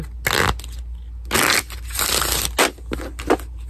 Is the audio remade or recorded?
recorded